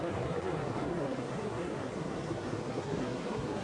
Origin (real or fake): fake